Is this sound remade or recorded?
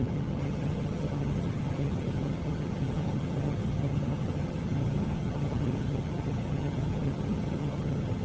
remade